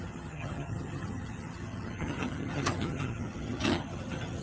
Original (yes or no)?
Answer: no